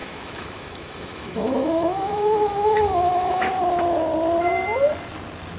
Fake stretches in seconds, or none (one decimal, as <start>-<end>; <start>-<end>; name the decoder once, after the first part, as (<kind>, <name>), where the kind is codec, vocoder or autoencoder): 0.0-3.4 (autoencoder, DAC-VAE)